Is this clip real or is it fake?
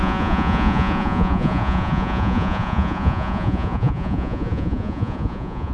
fake